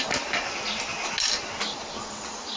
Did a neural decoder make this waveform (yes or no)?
no